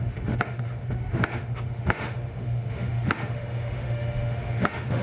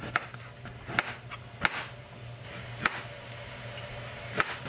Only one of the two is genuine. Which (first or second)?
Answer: second